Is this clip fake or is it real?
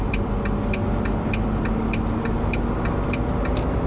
real